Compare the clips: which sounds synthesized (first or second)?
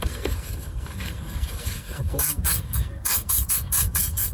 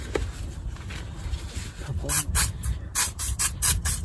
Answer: first